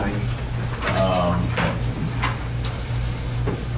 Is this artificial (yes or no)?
no